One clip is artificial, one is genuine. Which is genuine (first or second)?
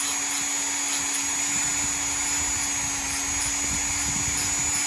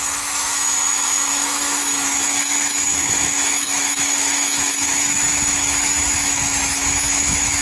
first